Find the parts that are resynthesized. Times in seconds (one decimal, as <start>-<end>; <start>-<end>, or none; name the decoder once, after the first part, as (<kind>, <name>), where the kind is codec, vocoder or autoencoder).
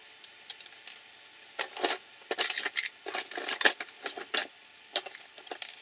none